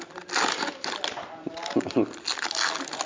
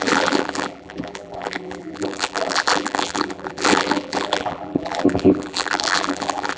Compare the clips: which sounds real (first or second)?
first